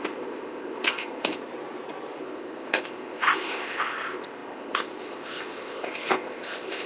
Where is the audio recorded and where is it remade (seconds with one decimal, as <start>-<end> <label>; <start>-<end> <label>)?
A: 0.0-1.5 remade; 1.5-2.2 recorded; 2.2-6.9 remade